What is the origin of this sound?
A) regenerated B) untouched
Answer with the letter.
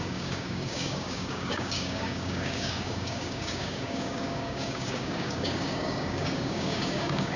A